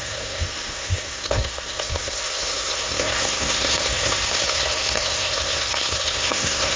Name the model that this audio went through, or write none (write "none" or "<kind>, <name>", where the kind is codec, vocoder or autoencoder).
codec, SNAC